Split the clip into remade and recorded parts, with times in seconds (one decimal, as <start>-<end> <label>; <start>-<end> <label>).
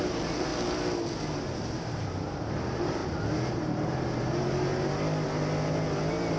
0.0-0.5 remade; 0.5-1.6 recorded; 1.6-3.0 remade; 3.0-3.5 recorded; 3.5-4.7 remade; 4.7-6.4 recorded